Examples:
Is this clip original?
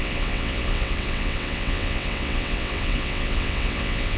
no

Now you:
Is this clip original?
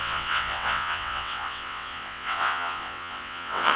no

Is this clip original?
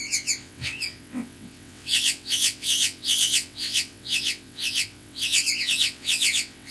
no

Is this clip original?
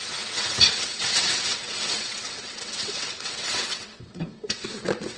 no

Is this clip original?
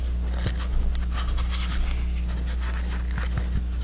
yes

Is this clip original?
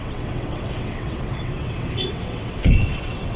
no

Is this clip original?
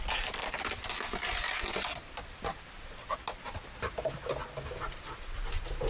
yes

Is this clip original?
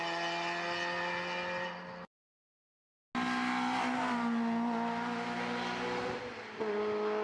yes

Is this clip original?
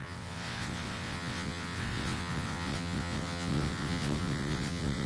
no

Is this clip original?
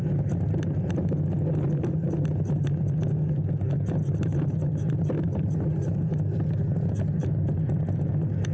yes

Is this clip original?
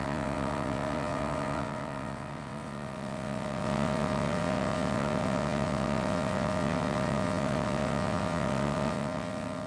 no